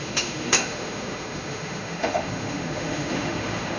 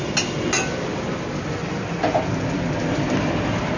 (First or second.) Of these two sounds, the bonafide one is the second